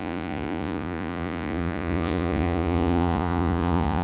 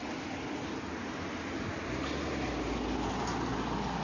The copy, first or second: first